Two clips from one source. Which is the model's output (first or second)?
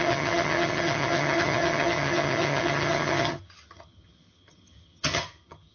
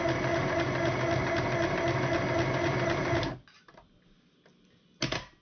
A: first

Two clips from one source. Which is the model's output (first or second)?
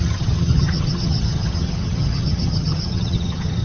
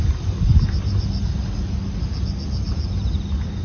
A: first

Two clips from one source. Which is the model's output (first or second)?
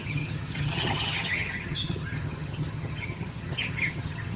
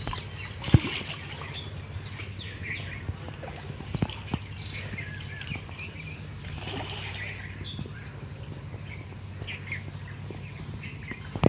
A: first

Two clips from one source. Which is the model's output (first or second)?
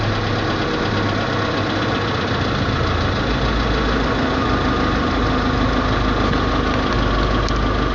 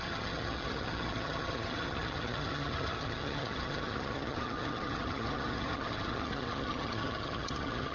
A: second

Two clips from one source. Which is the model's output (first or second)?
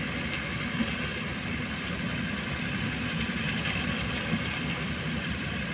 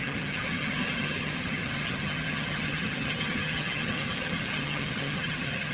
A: second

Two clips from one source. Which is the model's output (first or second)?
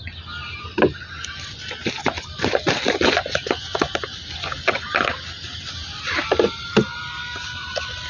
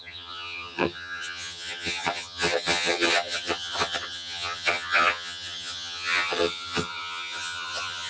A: second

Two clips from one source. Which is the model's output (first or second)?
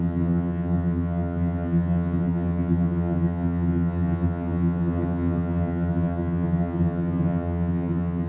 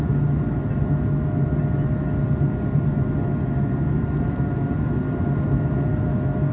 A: first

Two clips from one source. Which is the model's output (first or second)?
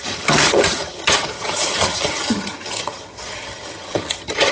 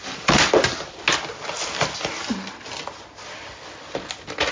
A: first